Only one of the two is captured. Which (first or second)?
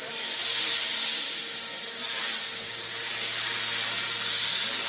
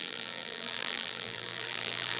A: first